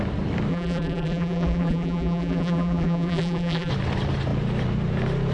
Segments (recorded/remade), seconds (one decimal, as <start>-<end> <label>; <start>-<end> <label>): 0.0-0.5 recorded; 0.5-3.7 remade; 3.7-5.3 recorded